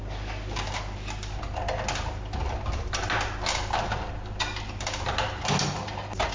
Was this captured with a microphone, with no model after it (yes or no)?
yes